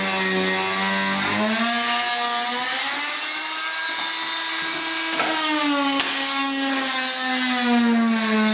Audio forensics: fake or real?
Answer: real